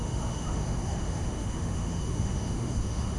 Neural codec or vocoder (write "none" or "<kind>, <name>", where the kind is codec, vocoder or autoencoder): autoencoder, DAC-VAE